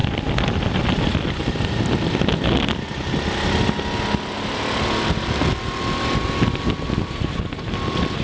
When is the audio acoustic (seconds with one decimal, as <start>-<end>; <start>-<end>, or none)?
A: 0.0-8.2